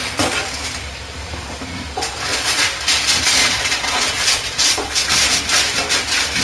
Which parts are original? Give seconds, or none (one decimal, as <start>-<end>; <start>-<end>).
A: 0.0-2.3; 2.8-3.4; 5.0-6.4